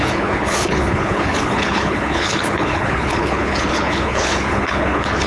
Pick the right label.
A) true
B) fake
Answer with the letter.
B